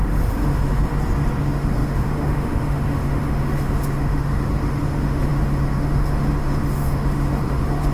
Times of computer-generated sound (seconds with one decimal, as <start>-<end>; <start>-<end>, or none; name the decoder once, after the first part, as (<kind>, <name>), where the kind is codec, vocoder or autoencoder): 0.0-0.9 (autoencoder, DAC-VAE); 1.4-7.9